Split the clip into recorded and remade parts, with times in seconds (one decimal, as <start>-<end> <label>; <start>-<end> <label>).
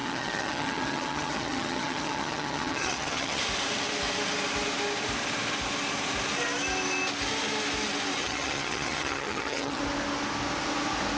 0.0-3.4 remade; 3.4-8.2 recorded; 8.2-9.8 remade; 9.8-11.2 recorded